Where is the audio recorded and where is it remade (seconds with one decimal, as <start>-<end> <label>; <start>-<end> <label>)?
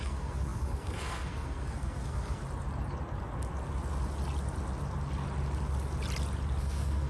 0.0-2.4 remade; 2.4-6.6 recorded; 6.6-7.1 remade